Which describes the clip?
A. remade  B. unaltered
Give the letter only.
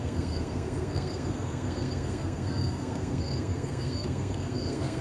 A